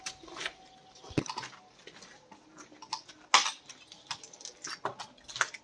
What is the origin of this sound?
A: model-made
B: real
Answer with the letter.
B